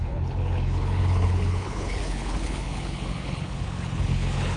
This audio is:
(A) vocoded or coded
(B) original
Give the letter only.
A